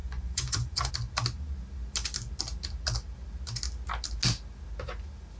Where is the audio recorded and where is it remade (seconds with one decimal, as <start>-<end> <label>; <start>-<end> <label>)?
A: 0.0-0.9 remade; 0.9-5.4 recorded